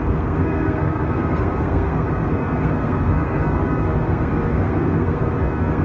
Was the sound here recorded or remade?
remade